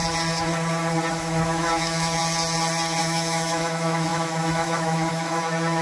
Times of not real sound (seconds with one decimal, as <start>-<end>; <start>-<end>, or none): 1.1-2.2; 3.0-5.8